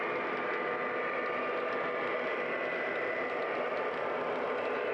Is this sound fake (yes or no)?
no